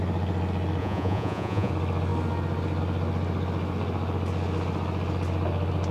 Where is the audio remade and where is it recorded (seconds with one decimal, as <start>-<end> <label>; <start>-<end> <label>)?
0.0-0.8 recorded; 0.8-1.7 remade; 1.7-5.9 recorded